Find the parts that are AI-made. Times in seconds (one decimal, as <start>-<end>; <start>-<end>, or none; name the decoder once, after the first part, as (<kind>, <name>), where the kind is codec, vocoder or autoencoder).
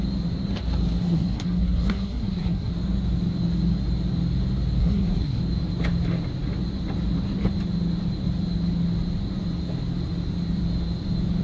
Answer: 1.0-2.7 (codec, SNAC); 4.8-5.4